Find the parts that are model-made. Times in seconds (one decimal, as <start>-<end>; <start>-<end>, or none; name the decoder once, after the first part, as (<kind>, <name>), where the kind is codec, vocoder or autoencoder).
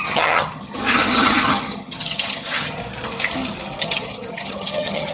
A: 0.0-2.8 (vocoder, HiFi-GAN); 3.8-5.1